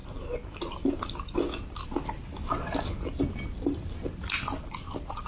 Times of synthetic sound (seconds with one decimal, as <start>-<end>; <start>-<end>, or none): none